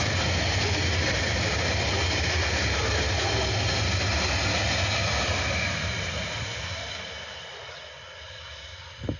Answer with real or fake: real